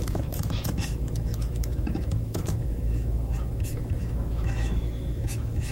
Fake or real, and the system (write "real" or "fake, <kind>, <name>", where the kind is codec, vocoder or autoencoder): fake, autoencoder, DAC-VAE